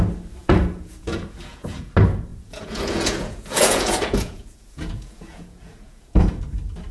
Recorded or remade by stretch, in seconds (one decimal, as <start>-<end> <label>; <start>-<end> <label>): 0.0-0.4 recorded; 0.4-1.9 remade; 1.9-2.3 recorded; 2.3-6.4 remade; 6.4-6.9 recorded